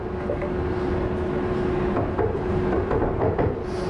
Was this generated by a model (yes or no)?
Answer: no